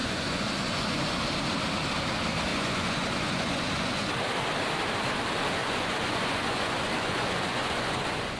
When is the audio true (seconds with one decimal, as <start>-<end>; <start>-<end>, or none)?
1.2-2.5; 4.1-5.6